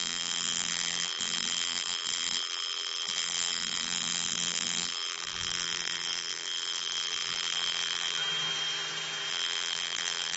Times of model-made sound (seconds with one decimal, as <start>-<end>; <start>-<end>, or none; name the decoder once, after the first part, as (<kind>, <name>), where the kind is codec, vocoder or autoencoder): 0.0-8.2 (vocoder, BigVGAN v2); 9.3-10.4